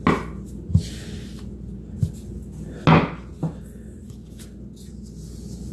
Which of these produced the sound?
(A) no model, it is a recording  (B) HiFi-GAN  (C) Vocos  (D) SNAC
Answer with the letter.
A